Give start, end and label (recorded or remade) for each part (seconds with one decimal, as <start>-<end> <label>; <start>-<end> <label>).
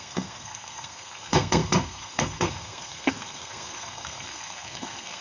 0.0-5.2 remade